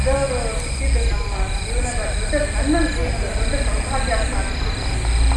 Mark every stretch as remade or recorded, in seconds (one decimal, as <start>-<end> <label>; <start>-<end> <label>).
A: 0.0-5.4 recorded